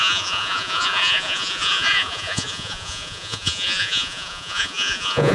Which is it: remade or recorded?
remade